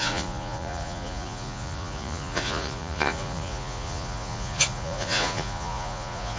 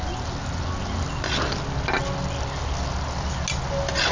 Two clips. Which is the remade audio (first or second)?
first